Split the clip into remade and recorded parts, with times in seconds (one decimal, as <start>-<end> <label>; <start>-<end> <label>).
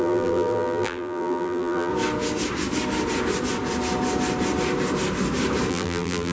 0.0-1.9 remade; 1.9-5.7 recorded; 5.7-6.3 remade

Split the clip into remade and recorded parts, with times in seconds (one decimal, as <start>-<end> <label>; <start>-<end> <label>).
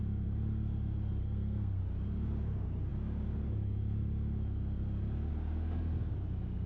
0.0-1.2 recorded; 1.2-1.8 remade; 1.8-6.7 recorded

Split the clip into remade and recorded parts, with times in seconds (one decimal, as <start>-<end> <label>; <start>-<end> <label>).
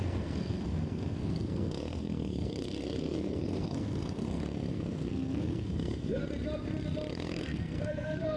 0.0-6.2 remade; 6.2-7.1 recorded; 7.1-8.4 remade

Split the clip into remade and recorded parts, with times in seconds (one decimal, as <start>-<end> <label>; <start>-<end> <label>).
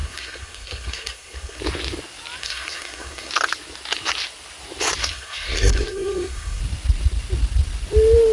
0.0-1.6 remade; 1.6-2.4 recorded; 2.4-3.3 remade; 3.3-5.0 recorded; 5.0-6.6 remade; 6.6-8.3 recorded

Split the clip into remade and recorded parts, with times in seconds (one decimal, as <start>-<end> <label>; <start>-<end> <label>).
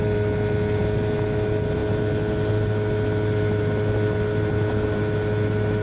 0.0-5.8 recorded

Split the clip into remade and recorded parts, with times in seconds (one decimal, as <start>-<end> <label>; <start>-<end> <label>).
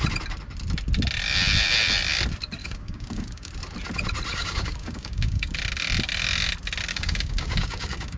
0.0-2.6 recorded; 2.6-3.5 remade; 3.5-4.3 recorded; 4.3-5.5 remade; 5.5-6.9 recorded; 6.9-8.2 remade